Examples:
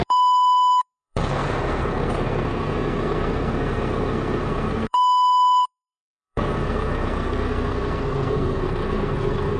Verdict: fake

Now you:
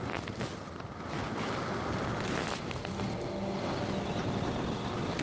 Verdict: real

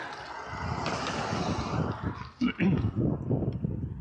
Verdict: real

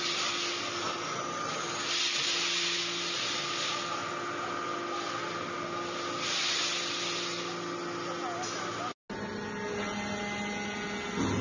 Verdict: real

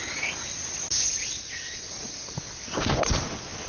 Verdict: real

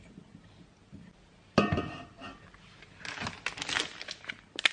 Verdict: real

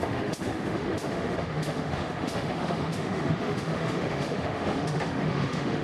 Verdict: fake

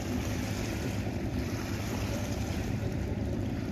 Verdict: fake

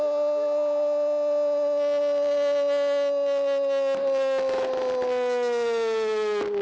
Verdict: real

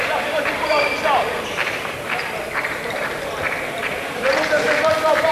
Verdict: fake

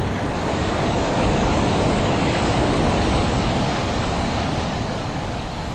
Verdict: fake